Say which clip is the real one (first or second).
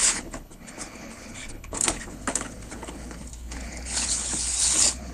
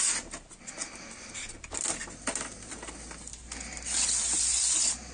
second